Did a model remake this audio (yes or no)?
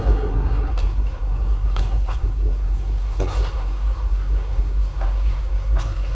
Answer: yes